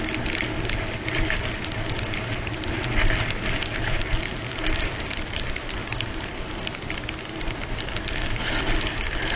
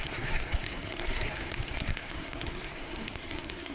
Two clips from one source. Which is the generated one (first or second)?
second